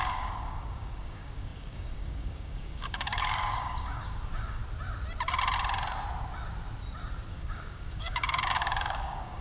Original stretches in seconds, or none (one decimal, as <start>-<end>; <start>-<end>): 4.6-7.3